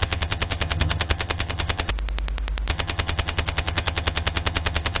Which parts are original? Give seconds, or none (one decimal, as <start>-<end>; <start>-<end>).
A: 1.9-2.7